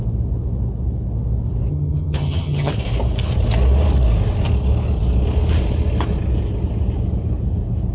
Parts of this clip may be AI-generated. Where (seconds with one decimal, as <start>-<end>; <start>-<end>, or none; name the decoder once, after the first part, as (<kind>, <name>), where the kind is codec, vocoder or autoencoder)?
1.7-2.7 (vocoder, HiFi-GAN)